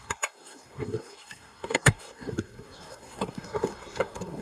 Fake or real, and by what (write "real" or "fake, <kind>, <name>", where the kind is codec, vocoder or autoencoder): fake, codec, SNAC